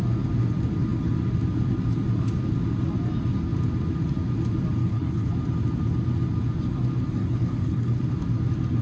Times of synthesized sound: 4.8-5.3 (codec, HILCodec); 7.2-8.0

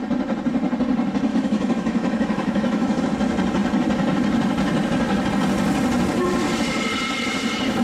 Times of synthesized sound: 1.3-3.0 (autoencoder, DAC-VAE)

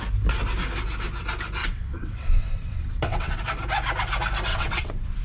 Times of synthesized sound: 1.6-3.4 (vocoder, WaveNeXt); 4.5-5.2

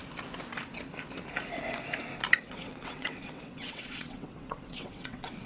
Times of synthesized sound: 2.4-5.5 (vocoder, WaveNeXt)

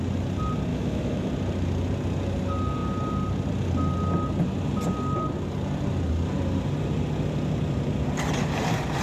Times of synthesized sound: 0.7-1.3 (autoencoder, DAC-VAE)